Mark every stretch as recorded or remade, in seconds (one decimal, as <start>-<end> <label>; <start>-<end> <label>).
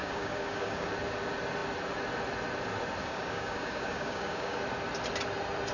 0.0-0.9 remade; 0.9-3.0 recorded; 3.0-4.6 remade; 4.6-5.7 recorded